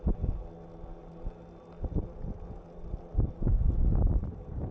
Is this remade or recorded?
recorded